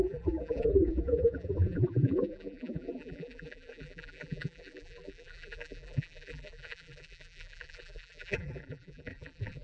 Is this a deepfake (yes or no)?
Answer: yes